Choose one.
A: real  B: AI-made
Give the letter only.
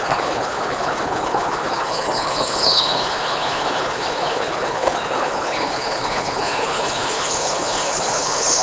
B